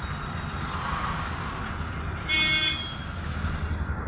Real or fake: real